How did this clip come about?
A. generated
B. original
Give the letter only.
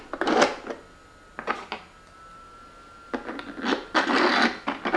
B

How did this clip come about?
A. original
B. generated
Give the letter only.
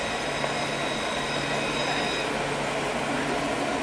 A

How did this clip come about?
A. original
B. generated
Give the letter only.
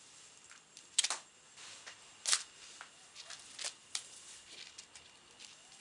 A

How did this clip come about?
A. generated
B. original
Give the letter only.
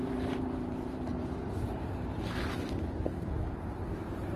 A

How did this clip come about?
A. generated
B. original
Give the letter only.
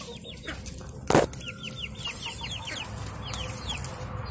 B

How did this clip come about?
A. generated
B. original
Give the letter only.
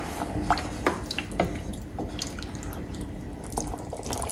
B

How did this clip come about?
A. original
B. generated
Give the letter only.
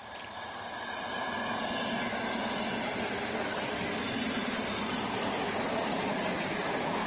A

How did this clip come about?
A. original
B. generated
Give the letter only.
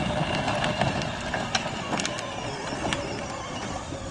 A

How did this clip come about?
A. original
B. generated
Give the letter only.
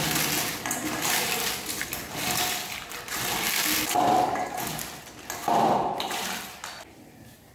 A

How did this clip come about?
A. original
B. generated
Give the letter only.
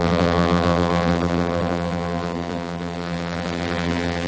B